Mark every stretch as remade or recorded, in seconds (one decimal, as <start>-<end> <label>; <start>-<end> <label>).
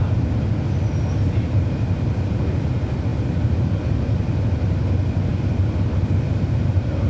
0.0-7.1 recorded